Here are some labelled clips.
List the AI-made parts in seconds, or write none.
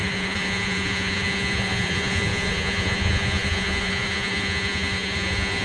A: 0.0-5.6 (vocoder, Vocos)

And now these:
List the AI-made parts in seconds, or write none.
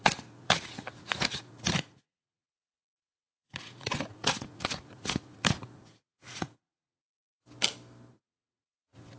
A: 0.0-7.4 (vocoder, Vocos); 8.1-9.2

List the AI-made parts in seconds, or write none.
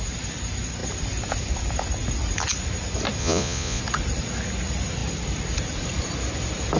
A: 3.2-3.8 (vocoder, Vocos)